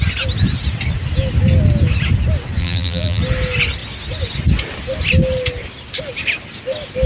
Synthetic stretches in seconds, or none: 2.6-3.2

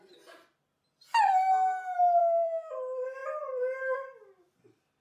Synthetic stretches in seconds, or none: 2.2-2.7

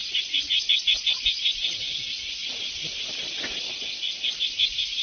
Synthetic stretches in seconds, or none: none